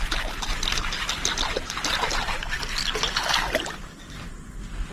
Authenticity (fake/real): real